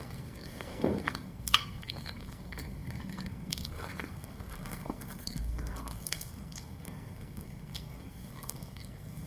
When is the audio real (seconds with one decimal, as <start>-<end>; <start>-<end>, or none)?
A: none